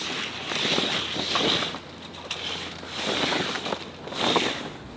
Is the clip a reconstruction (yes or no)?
no